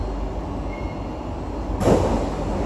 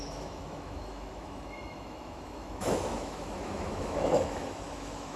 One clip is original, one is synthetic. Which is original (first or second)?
first